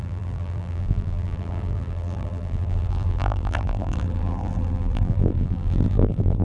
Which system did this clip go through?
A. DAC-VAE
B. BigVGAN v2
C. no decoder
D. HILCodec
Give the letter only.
B